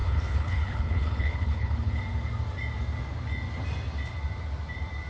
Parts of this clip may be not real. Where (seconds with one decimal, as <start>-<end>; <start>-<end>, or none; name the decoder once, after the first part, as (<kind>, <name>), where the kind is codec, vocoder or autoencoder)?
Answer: 0.0-2.0 (codec, HILCodec)